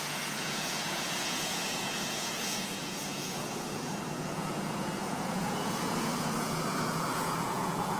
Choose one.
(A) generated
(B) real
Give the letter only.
A